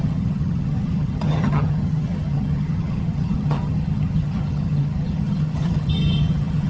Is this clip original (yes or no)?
no